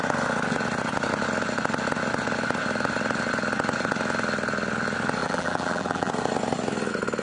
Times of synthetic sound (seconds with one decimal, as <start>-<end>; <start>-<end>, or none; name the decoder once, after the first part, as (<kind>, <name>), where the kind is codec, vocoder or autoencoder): 5.2-6.1 (vocoder, BigVGAN v2)

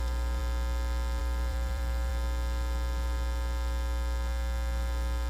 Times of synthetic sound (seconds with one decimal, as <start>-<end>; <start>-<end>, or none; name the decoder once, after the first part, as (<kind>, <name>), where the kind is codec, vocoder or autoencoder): 0.0-0.4 (vocoder, BigVGAN v2); 1.2-2.1

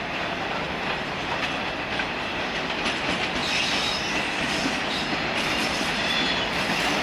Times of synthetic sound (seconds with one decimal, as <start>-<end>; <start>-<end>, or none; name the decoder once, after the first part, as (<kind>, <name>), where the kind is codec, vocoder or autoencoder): 0.0-3.4 (vocoder, BigVGAN v2); 5.0-7.0

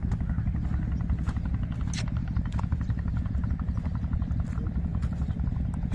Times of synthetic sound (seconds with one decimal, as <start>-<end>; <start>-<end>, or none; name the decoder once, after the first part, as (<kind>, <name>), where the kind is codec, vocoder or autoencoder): 2.2-3.5 (vocoder, BigVGAN v2)